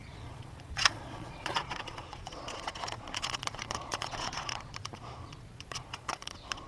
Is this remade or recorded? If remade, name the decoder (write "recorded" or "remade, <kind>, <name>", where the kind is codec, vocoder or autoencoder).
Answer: remade, vocoder, Vocos